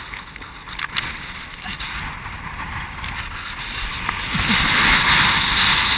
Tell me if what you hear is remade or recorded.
recorded